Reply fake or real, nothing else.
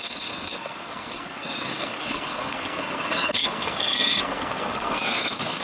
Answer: fake